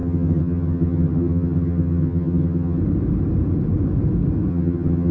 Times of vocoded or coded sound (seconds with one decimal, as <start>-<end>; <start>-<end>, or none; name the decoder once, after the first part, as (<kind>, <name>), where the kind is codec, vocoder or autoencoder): 0.0-2.8 (vocoder, HiFi-GAN); 4.5-5.1

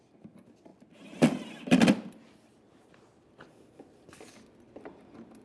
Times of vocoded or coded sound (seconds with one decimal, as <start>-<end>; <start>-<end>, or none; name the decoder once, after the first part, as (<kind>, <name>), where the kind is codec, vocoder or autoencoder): none